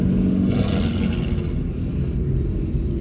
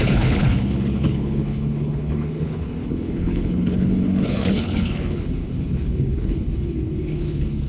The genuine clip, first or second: first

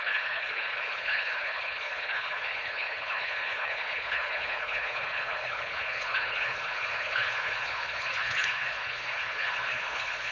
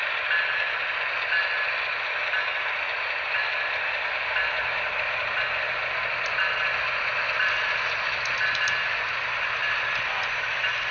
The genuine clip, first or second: second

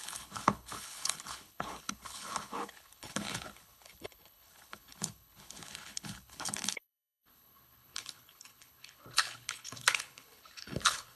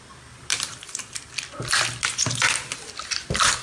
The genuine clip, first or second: second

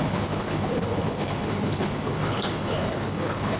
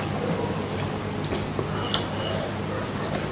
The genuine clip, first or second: second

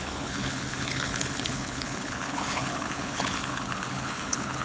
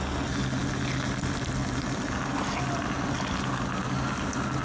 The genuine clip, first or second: second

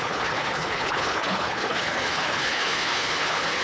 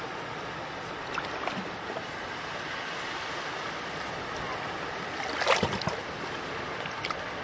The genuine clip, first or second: second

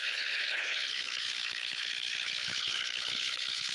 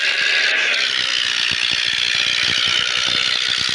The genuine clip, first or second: second